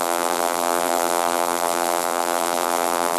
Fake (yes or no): yes